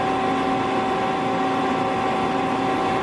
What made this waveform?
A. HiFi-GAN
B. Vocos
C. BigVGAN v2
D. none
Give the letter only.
D